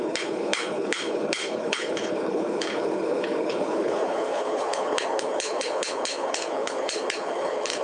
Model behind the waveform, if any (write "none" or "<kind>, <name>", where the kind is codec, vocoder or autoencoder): codec, HILCodec